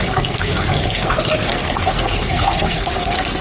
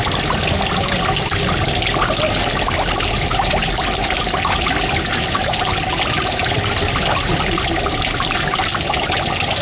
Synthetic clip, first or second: first